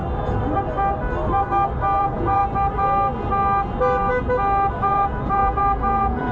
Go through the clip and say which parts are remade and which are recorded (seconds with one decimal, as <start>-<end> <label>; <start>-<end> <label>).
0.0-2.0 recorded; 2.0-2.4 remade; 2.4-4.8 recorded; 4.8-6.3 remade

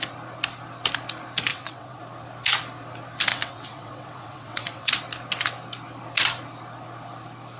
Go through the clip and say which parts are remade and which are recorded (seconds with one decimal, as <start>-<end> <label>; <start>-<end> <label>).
0.0-1.5 recorded; 1.5-2.0 remade; 2.0-3.3 recorded; 3.3-4.9 remade; 4.9-7.6 recorded

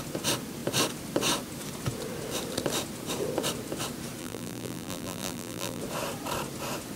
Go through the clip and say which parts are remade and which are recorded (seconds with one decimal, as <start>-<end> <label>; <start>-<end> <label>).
0.0-4.2 recorded; 4.2-5.8 remade; 5.8-7.0 recorded

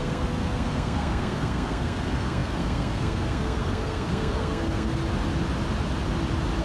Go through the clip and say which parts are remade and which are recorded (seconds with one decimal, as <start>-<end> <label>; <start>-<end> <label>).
0.0-5.0 remade; 5.0-6.6 recorded

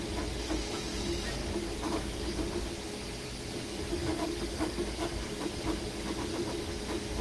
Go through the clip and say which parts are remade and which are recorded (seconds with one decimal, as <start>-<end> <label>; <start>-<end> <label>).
0.0-1.4 recorded; 1.4-2.4 remade; 2.4-4.0 recorded; 4.0-5.4 remade; 5.4-7.2 recorded

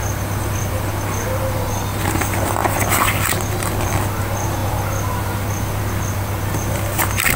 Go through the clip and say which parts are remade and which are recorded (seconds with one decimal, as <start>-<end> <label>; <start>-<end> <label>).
0.0-7.4 recorded

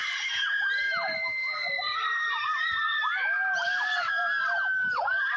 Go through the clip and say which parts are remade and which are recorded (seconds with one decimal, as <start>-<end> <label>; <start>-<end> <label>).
0.0-5.4 recorded